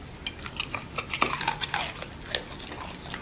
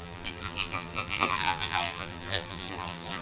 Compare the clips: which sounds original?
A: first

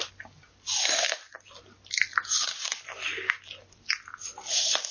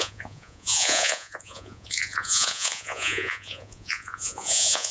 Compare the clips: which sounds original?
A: first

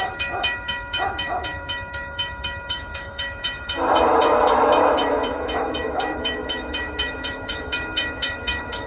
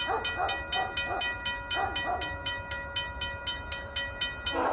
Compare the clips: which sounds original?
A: second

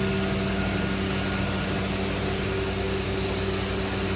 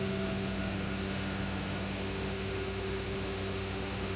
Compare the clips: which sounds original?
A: first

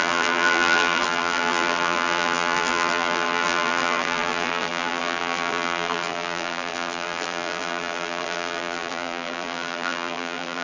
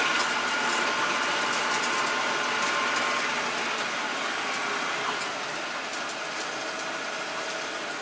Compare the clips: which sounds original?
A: second